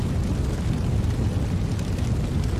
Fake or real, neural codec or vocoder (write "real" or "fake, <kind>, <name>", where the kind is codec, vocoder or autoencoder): real